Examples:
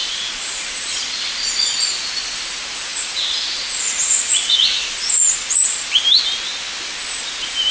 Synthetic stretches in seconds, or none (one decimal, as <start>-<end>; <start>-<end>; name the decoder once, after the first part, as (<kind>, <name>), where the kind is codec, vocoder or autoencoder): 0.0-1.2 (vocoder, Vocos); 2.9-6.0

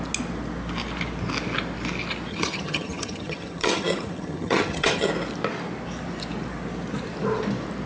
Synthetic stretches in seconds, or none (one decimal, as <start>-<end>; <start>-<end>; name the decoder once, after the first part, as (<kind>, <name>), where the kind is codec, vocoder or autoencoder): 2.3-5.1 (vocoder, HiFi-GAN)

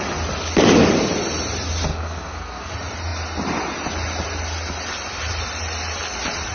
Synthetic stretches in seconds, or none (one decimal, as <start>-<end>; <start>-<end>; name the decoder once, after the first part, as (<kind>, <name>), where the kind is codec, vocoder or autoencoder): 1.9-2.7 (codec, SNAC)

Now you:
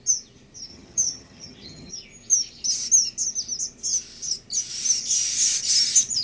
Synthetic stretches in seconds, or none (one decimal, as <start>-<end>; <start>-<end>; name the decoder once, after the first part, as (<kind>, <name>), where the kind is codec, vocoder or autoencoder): 0.7-1.9 (vocoder, HiFi-GAN)

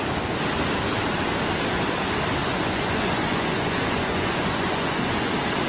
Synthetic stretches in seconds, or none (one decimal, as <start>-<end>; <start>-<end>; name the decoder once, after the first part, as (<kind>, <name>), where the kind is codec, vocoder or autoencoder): 2.4-5.3 (vocoder, Vocos)

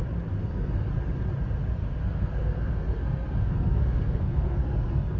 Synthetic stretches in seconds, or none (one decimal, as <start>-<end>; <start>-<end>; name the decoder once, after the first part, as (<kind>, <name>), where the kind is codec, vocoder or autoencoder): 0.4-0.9 (codec, SNAC); 2.0-5.2

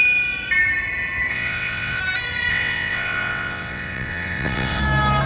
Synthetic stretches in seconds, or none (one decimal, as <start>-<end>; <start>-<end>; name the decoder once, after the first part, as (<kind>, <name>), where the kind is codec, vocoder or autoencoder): 1.3-2.0 (vocoder, WaveNeXt); 2.5-4.8